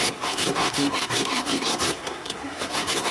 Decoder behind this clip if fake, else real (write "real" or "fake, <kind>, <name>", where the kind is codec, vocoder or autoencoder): fake, codec, SNAC